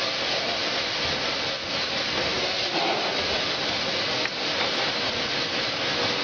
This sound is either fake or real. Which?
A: real